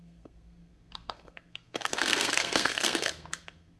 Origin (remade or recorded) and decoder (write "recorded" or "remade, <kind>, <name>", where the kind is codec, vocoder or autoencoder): remade, codec, SNAC